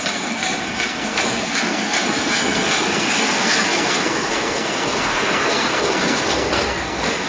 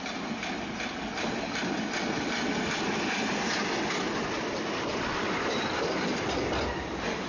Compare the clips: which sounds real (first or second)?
second